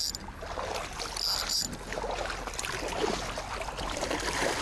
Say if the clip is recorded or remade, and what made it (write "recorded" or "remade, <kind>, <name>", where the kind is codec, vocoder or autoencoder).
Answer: recorded